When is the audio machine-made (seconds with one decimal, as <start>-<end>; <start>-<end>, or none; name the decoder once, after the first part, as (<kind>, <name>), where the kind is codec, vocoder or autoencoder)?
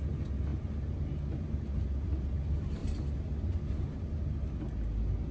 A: none